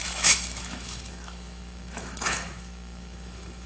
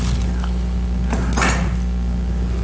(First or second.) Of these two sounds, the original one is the second